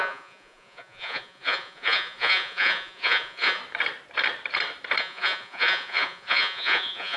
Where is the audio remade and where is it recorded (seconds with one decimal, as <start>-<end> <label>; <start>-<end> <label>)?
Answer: 0.0-3.6 remade; 3.6-5.0 recorded; 5.0-7.2 remade